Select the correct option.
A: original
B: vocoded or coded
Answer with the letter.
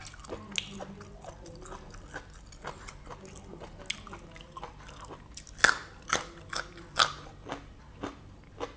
A